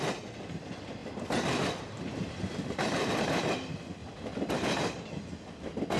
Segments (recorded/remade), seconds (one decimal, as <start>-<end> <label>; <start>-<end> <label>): 0.0-1.0 recorded; 1.0-3.2 remade; 3.2-4.0 recorded; 4.0-4.5 remade; 4.5-6.0 recorded